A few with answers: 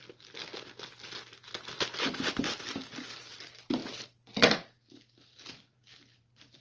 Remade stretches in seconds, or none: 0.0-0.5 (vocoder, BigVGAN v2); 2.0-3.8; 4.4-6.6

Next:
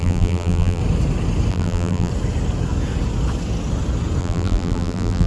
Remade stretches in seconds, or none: 0.0-0.8 (vocoder, BigVGAN v2); 1.5-2.1; 4.2-5.3

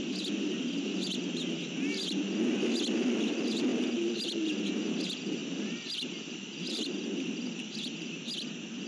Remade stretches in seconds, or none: 3.7-4.5 (vocoder, BigVGAN v2); 5.4-6.9

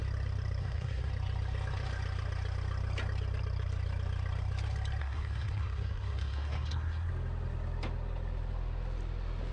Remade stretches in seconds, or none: 0.6-1.1 (codec, SNAC); 5.0-7.1

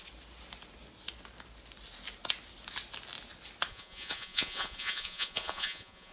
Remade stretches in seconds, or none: 3.7-6.1 (vocoder, Vocos)

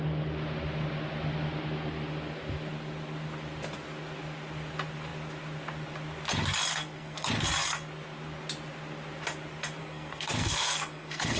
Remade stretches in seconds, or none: 6.7-7.3 (codec, SNAC); 9.8-11.4